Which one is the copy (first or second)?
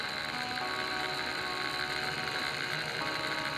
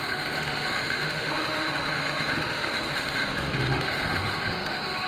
second